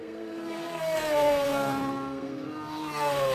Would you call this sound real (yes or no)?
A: no